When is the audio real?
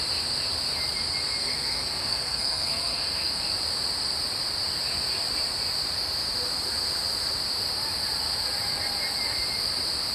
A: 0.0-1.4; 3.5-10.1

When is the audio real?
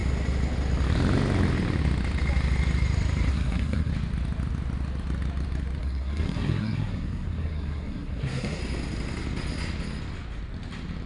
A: 0.0-3.3; 3.9-5.8; 8.6-11.1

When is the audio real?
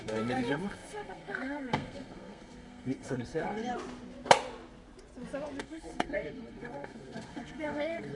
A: 3.7-5.6